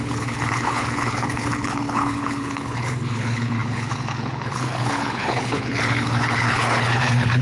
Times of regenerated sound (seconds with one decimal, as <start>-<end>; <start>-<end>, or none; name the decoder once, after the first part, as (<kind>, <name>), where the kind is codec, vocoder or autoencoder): 0.0-7.4 (codec, HILCodec)